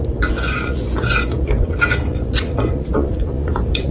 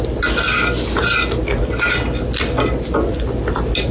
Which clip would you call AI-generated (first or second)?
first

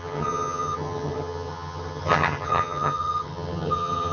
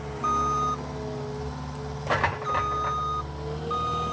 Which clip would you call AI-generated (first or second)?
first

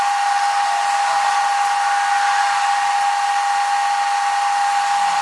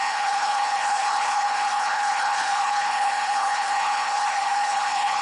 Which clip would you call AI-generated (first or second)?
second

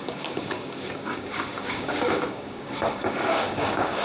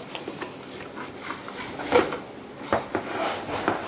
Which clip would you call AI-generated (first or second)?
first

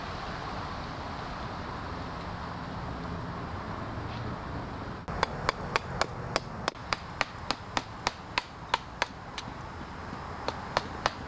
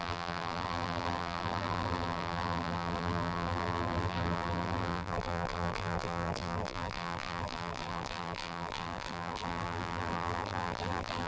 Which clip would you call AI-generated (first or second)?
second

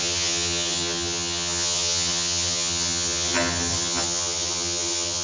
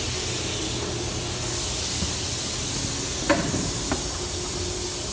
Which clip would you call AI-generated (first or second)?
first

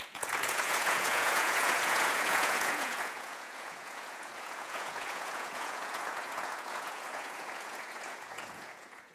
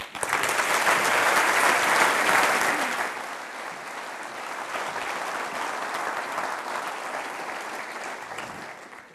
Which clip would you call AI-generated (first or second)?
first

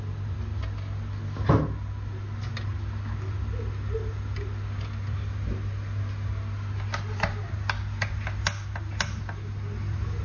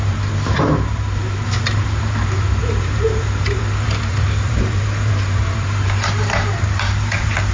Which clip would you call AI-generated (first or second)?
second